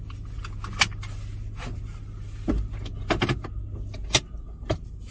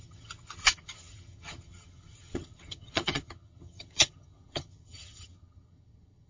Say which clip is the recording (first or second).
first